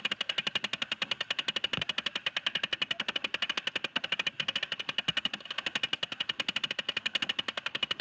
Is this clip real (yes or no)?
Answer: yes